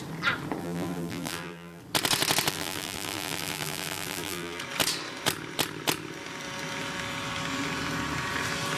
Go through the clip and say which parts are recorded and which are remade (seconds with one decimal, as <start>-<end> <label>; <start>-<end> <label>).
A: 0.0-0.6 recorded; 0.6-1.8 remade; 1.8-2.5 recorded; 2.5-4.6 remade; 4.6-8.8 recorded